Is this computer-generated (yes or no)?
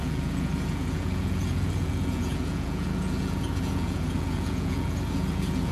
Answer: yes